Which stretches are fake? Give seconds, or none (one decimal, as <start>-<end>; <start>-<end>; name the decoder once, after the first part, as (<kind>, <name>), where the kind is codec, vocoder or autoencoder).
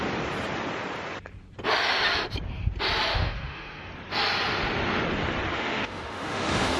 3.1-3.9 (autoencoder, DAC-VAE); 5.5-6.8